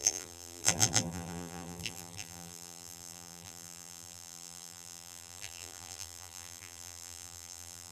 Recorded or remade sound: remade